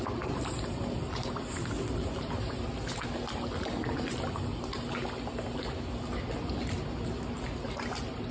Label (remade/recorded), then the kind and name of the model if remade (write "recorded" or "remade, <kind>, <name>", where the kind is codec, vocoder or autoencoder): recorded